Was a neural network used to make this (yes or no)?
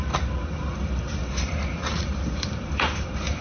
yes